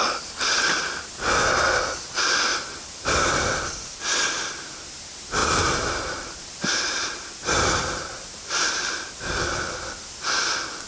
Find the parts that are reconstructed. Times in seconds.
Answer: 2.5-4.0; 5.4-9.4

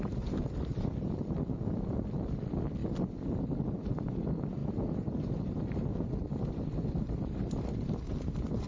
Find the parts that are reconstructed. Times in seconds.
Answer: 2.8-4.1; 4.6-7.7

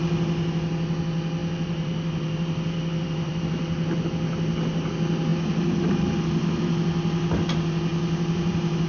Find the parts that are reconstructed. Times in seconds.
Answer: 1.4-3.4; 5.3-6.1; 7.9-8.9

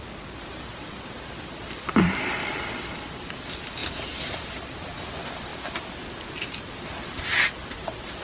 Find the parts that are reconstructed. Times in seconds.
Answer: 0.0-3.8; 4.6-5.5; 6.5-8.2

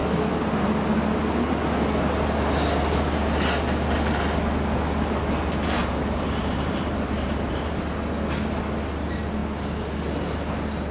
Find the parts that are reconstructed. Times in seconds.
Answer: 5.8-7.8

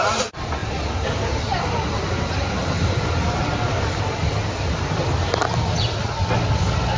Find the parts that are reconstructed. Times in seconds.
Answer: none

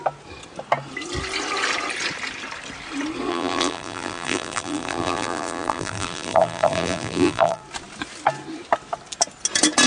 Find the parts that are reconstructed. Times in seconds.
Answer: 3.3-7.6

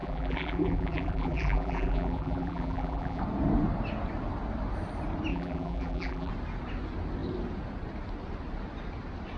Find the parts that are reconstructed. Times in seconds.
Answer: 0.0-3.2; 5.3-6.3